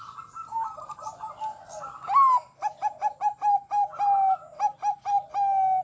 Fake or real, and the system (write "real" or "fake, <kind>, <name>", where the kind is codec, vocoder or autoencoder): real